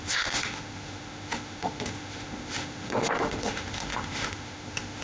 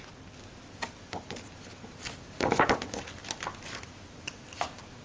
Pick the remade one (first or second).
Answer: first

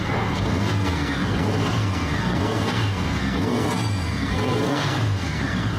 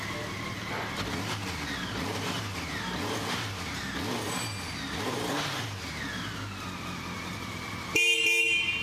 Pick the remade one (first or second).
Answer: first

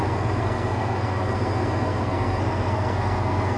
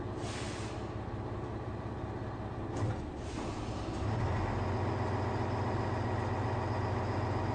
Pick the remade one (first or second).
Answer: first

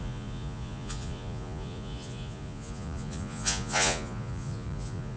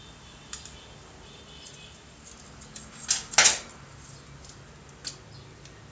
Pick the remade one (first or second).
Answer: first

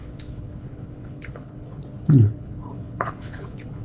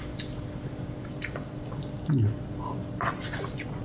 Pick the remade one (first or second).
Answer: first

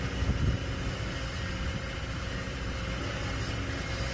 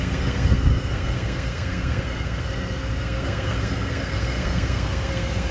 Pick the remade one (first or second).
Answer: second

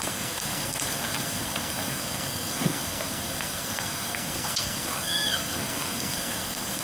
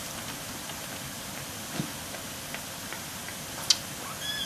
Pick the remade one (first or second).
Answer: first